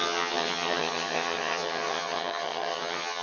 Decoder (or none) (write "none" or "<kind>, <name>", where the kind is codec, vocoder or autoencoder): vocoder, HiFi-GAN